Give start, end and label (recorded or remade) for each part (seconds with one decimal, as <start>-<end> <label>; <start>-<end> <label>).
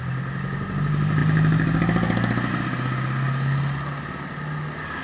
0.0-5.0 recorded